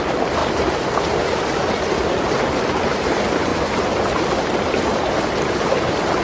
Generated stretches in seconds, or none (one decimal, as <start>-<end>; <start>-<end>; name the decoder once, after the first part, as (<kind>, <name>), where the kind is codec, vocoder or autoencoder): none